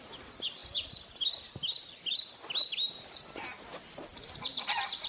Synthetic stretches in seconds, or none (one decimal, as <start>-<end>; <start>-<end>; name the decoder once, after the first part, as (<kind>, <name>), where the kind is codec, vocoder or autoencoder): none